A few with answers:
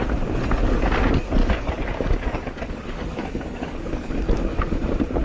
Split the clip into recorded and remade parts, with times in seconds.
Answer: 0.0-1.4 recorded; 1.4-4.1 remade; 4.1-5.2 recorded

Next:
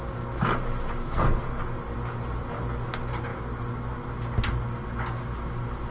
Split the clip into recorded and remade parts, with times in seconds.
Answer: 0.0-1.0 recorded; 1.0-1.6 remade; 1.6-5.9 recorded

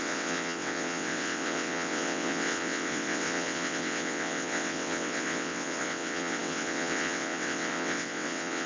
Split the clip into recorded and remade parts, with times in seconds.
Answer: 0.0-8.7 remade

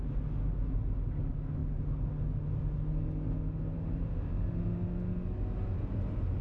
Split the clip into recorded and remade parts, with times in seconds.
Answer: 0.0-6.4 recorded

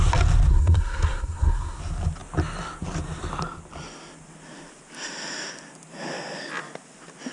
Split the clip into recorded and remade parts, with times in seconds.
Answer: 0.0-0.5 recorded; 0.5-1.8 remade; 1.8-7.3 recorded